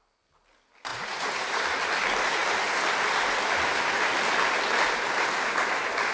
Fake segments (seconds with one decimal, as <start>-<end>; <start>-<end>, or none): 0.9-1.6